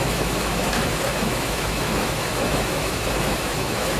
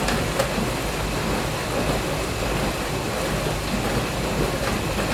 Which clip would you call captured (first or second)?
second